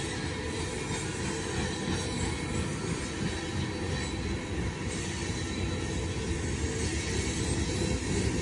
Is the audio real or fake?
real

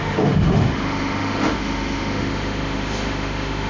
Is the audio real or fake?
fake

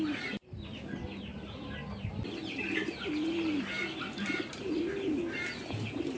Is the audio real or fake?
real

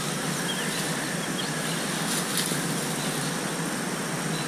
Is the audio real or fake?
real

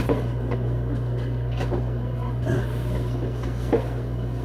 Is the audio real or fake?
fake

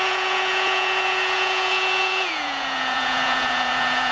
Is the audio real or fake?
fake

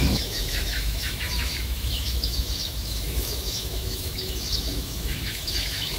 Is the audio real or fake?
fake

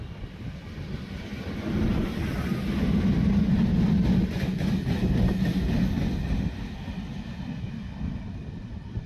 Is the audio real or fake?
real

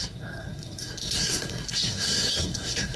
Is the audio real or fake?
fake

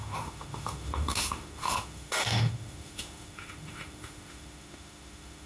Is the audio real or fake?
fake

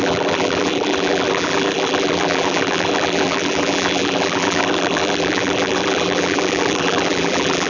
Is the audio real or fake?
fake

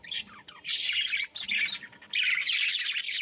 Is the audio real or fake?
real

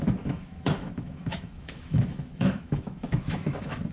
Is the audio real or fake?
fake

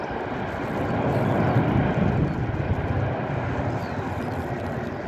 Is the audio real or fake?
real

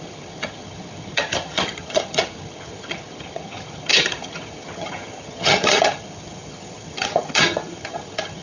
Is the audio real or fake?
fake